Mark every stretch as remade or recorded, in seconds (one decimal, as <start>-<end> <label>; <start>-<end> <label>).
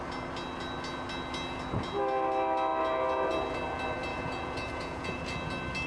0.0-4.1 recorded; 4.1-5.5 remade; 5.5-5.9 recorded